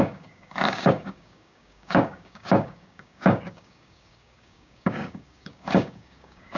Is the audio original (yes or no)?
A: no